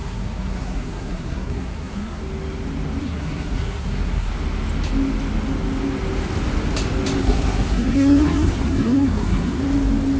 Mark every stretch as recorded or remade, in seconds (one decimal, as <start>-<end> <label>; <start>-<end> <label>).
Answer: 0.0-2.2 remade; 2.2-3.0 recorded; 3.0-4.3 remade; 4.3-7.2 recorded; 7.2-9.6 remade; 9.6-10.2 recorded